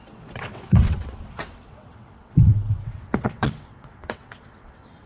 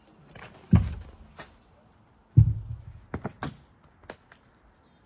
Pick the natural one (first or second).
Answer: second